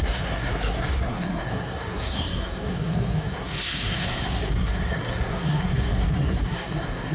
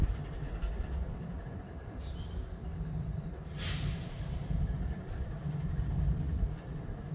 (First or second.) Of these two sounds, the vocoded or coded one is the first